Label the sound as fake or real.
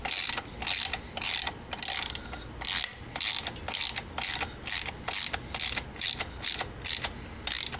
real